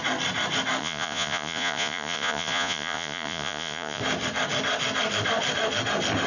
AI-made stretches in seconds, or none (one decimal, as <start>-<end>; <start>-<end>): 0.8-4.0